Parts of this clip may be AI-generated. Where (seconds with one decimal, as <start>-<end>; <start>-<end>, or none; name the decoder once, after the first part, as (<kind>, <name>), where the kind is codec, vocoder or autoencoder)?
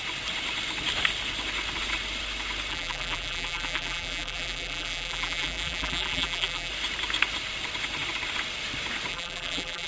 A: 2.7-6.7 (vocoder, BigVGAN v2); 9.1-9.9